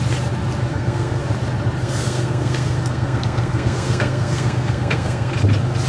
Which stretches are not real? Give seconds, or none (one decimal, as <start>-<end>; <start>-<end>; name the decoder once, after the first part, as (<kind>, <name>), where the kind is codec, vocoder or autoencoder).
0.7-1.2 (codec, SNAC); 1.8-5.3